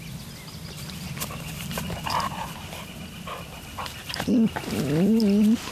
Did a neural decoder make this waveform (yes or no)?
no